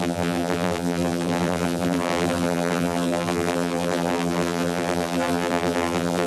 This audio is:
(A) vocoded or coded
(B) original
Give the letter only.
A